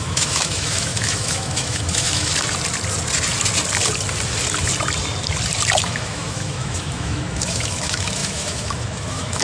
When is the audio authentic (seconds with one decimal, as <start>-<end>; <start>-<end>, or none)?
2.3-5.8